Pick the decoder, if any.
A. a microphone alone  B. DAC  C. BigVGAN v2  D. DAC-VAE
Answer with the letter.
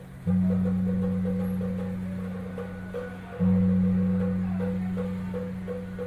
A